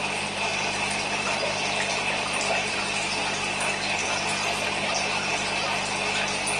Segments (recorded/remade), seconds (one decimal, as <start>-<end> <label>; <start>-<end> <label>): 0.0-0.5 recorded; 0.5-2.7 remade; 2.7-4.0 recorded; 4.0-5.3 remade; 5.3-6.6 recorded